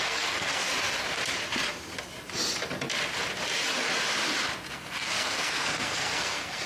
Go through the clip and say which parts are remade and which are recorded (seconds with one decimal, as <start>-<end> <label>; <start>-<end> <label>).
0.0-0.7 remade; 0.7-4.7 recorded; 4.7-6.7 remade